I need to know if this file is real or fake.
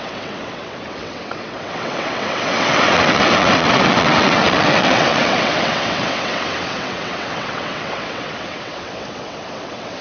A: fake